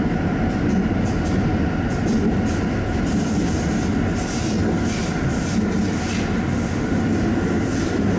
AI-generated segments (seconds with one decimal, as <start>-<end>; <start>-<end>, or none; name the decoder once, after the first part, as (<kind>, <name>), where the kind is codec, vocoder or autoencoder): 6.5-7.0 (autoencoder, DAC-VAE)